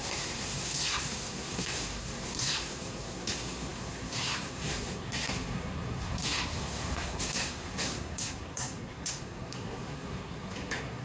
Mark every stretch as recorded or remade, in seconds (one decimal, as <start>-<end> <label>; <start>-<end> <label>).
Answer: 0.0-11.0 remade